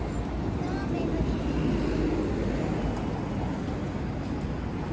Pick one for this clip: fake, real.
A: real